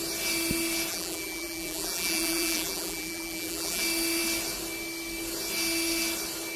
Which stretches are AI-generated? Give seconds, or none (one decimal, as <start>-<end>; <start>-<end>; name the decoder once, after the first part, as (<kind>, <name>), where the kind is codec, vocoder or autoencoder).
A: 0.9-3.8 (vocoder, BigVGAN v2)